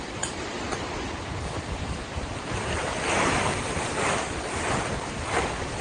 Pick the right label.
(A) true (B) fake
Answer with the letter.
B